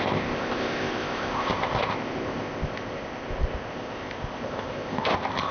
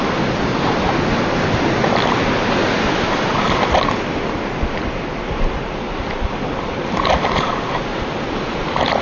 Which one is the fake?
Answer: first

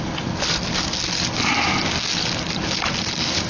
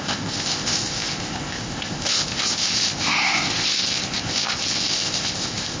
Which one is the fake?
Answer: second